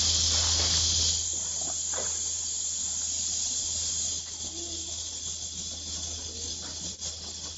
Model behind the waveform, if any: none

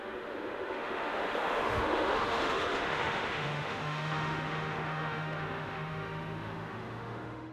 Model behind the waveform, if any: autoencoder, DAC-VAE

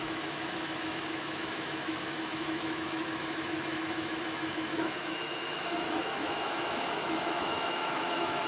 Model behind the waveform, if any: autoencoder, DAC-VAE